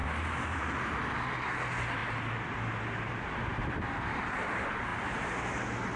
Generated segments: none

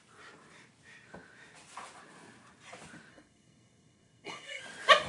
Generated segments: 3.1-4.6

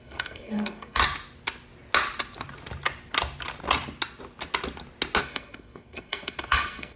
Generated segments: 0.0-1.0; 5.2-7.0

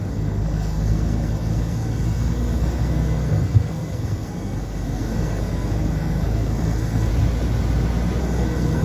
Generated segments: 0.0-7.1; 8.2-8.8

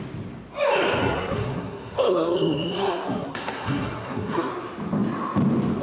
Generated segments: 1.0-4.5

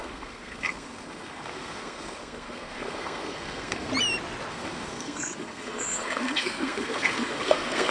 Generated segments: 0.0-3.9; 4.5-7.9

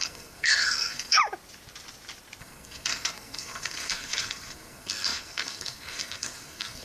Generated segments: 0.0-1.2; 2.4-6.8

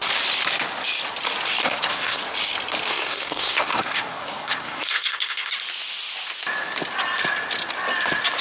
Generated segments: 1.6-2.2; 2.9-5.5